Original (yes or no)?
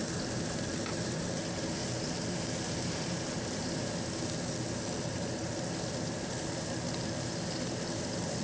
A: no